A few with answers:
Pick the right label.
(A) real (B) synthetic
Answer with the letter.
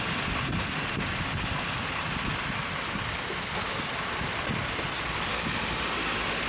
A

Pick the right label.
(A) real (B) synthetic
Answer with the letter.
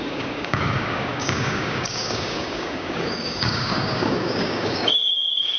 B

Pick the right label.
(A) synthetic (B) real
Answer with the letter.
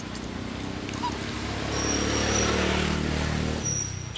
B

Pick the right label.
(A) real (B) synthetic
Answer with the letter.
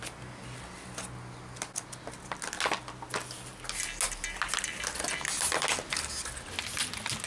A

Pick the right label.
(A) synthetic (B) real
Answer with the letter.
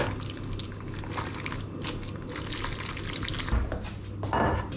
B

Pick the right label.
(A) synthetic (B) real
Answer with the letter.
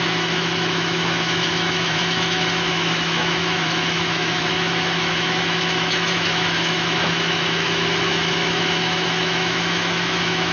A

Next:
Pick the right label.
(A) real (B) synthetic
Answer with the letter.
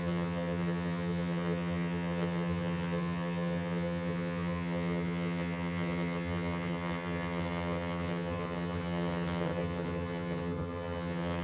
B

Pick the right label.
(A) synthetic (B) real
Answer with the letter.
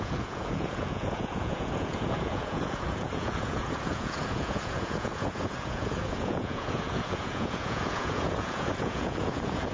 A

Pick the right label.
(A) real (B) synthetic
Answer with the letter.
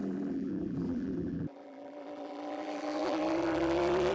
B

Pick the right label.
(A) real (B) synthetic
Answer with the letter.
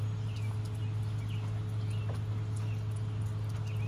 A